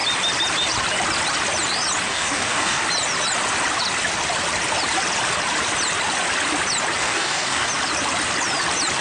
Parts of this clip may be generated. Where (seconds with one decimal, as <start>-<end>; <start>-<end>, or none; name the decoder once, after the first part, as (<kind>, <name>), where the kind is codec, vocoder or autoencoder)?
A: 2.1-2.8 (codec, DAC); 7.0-7.7